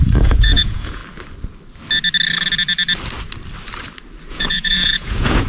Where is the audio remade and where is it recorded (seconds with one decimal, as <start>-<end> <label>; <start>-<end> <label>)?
0.0-1.0 remade; 1.0-4.3 recorded; 4.3-5.5 remade